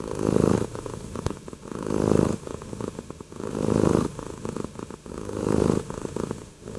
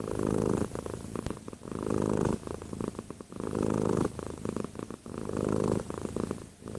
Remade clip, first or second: first